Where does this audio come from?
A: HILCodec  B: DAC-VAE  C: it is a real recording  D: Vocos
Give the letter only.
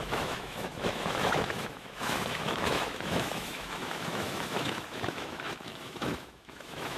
B